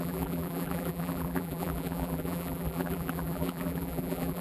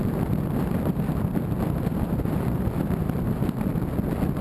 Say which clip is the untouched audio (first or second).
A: second